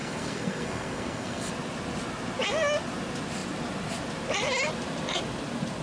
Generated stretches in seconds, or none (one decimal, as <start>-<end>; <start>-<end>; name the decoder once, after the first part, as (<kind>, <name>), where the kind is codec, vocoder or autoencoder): 0.0-1.5 (codec, SNAC)